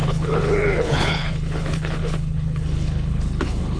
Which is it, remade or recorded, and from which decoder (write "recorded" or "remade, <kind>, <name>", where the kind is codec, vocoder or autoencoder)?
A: remade, codec, HILCodec